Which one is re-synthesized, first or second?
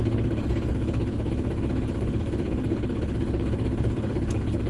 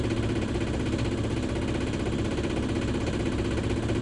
first